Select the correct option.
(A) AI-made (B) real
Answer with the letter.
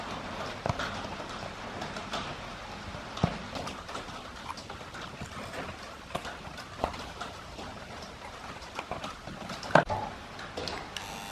B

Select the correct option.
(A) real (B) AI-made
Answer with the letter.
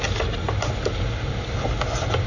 A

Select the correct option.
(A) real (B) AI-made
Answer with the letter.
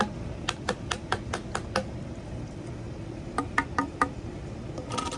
A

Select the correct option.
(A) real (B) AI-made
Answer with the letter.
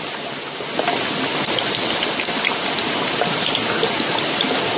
A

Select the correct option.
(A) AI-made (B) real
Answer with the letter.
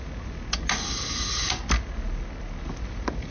B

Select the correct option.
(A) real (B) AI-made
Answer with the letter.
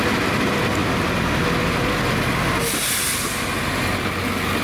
A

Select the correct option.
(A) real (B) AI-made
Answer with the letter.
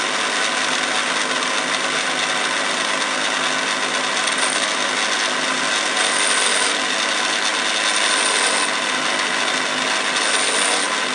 A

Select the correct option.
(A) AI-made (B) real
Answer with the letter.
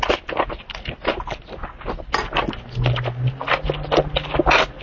B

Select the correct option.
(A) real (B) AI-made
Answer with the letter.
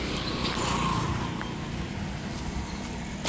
A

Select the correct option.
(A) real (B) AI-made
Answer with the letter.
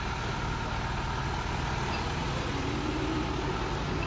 A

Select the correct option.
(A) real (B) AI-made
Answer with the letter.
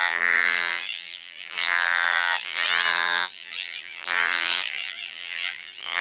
B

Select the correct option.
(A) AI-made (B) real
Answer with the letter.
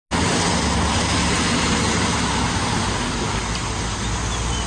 B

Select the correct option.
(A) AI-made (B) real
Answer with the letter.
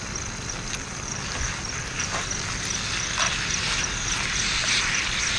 A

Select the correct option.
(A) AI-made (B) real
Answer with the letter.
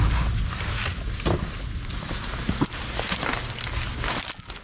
B